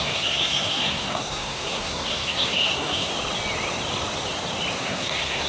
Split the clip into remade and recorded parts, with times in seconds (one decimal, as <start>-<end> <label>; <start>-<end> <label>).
0.0-3.1 remade; 3.1-4.8 recorded; 4.8-5.5 remade